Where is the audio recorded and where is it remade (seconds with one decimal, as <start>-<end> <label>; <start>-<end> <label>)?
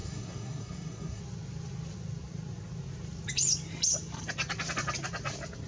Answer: 0.0-1.2 remade; 1.2-5.7 recorded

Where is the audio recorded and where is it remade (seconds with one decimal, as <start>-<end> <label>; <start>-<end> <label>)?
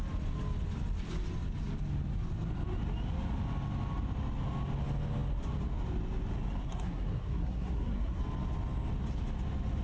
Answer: 0.0-6.6 recorded; 6.6-8.2 remade; 8.2-9.8 recorded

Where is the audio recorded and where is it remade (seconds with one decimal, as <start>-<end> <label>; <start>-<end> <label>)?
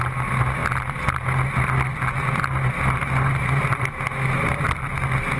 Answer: 0.0-5.4 recorded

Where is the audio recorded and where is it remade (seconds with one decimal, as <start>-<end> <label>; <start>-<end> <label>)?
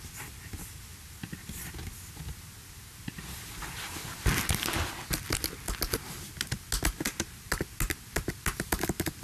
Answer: 0.0-9.2 recorded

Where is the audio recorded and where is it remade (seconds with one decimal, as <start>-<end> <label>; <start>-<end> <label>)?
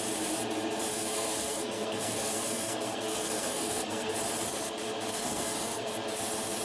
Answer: 0.0-0.9 recorded; 0.9-4.1 remade; 4.1-5.1 recorded; 5.1-5.9 remade; 5.9-6.6 recorded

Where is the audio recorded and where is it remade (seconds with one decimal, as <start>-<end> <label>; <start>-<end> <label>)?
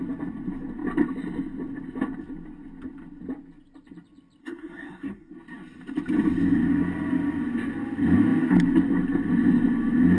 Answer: 0.0-4.4 recorded; 4.4-5.3 remade; 5.3-10.2 recorded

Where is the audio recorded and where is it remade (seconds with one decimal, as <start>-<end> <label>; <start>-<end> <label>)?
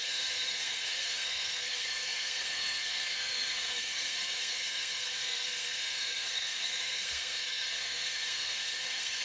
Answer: 0.0-9.2 remade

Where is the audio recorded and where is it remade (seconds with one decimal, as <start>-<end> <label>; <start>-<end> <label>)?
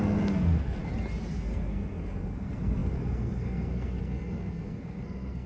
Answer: 0.0-0.8 remade; 0.8-1.3 recorded; 1.3-5.5 remade